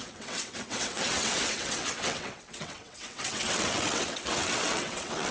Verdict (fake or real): fake